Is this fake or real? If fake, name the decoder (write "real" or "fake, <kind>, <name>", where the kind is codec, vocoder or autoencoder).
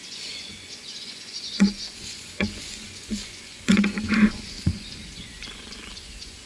fake, vocoder, Vocos